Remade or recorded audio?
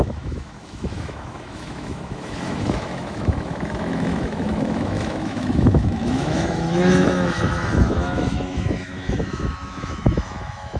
remade